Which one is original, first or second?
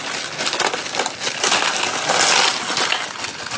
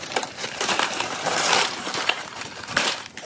first